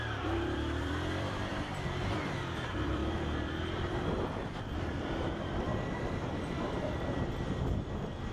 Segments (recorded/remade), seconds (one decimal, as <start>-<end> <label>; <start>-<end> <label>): 0.0-5.7 remade; 5.7-8.3 recorded